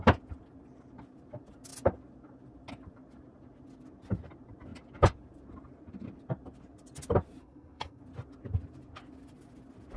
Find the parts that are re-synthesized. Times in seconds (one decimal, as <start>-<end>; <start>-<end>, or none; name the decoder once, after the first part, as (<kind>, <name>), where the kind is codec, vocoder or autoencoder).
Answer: 7.4-8.0 (codec, SNAC)